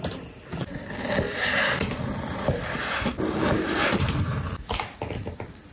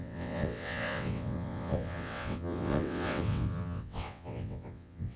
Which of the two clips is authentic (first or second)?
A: first